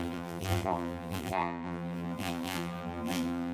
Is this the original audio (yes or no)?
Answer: no